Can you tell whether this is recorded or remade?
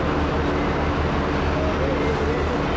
recorded